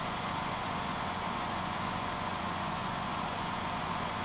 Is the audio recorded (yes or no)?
no